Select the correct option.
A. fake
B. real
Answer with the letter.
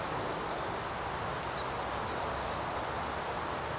B